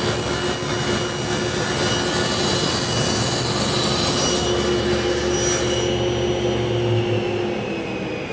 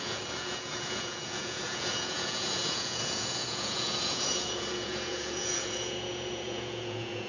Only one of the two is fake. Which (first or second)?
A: second